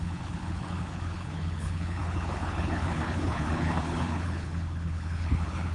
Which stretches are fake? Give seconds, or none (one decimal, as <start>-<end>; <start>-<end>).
0.0-5.7